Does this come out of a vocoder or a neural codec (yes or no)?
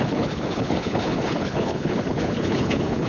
yes